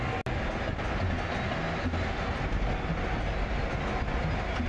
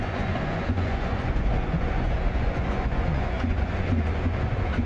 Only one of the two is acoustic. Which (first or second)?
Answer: first